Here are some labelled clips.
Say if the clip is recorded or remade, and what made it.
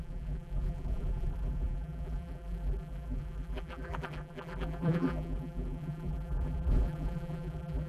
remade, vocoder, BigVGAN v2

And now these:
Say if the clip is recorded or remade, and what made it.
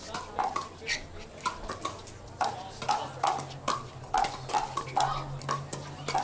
recorded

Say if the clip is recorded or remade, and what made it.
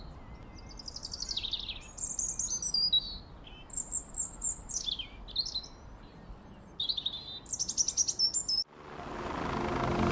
recorded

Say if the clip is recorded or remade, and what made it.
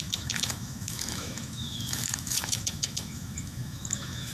remade, autoencoder, DAC-VAE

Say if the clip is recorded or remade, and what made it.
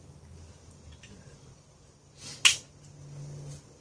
recorded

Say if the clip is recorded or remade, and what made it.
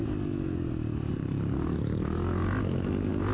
recorded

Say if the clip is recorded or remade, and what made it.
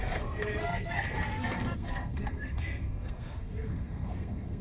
remade, codec, SNAC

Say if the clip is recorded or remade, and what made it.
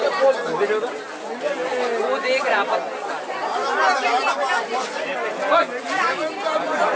recorded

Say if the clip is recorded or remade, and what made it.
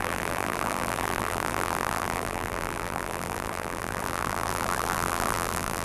remade, vocoder, BigVGAN v2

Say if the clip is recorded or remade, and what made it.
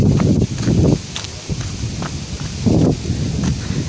recorded